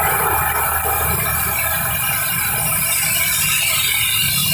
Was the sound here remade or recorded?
recorded